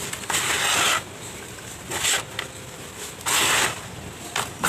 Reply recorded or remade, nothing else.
recorded